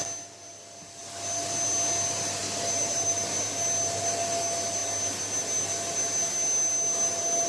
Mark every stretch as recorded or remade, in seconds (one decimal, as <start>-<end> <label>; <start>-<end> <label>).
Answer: 0.0-7.5 recorded